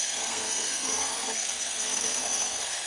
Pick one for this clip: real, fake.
fake